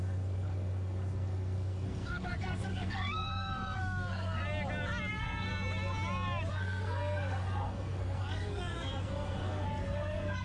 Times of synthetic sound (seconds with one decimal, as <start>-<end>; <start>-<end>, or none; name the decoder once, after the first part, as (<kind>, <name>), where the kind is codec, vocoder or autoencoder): 0.0-4.4 (codec, SNAC); 5.1-5.5; 6.5-10.4

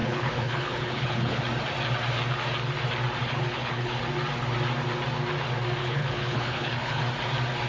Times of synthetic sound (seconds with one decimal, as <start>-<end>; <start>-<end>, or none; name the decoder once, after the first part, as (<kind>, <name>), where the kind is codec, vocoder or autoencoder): 0.0-1.4 (codec, HILCodec); 3.2-4.0; 5.8-7.0